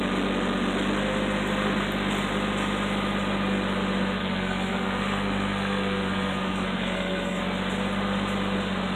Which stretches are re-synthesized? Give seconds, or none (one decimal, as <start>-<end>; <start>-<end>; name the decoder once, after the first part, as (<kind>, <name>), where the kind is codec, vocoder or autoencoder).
4.2-7.4 (codec, SNAC)